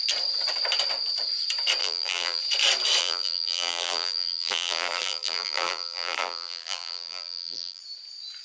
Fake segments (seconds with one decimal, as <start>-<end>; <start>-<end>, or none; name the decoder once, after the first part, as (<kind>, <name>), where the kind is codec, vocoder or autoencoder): 1.8-2.4 (vocoder, BigVGAN v2); 3.0-7.8